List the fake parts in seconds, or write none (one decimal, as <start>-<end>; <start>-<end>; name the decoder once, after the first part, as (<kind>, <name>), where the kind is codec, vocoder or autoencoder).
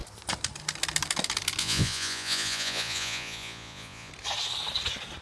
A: 1.6-4.1 (vocoder, Vocos)